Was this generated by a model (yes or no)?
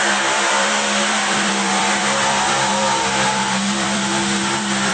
yes